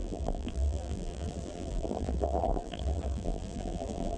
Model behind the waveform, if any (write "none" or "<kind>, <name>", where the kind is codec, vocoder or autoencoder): vocoder, BigVGAN v2